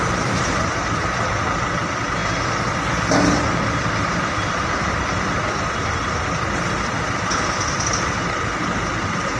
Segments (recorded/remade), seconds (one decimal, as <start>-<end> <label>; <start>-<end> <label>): 0.0-9.4 recorded